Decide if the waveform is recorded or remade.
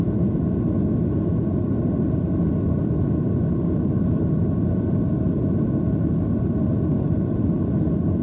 recorded